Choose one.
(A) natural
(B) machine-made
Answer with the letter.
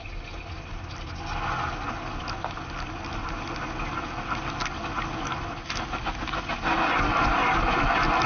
A